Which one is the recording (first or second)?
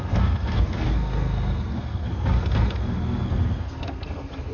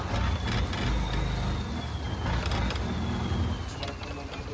second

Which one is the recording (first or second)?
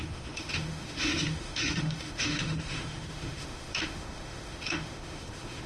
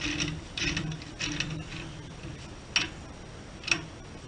second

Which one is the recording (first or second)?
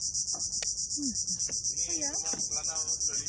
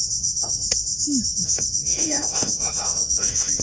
first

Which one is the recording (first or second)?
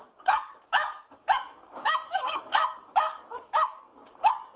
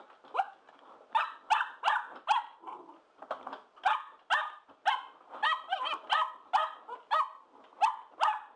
second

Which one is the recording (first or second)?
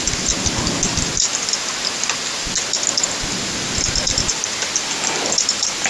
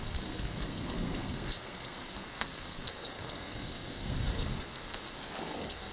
first